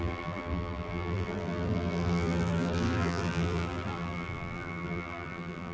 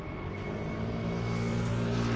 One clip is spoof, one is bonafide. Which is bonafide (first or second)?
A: second